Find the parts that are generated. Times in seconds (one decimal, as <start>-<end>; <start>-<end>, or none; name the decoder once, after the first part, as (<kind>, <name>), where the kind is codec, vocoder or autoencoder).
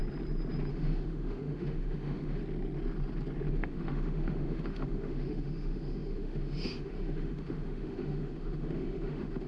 0.7-2.4 (autoencoder, DAC-VAE); 3.5-9.5